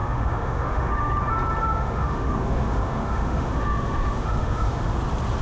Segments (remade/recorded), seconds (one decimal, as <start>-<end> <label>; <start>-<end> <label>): 0.0-1.2 remade; 1.2-1.6 recorded; 1.6-4.8 remade; 4.8-5.4 recorded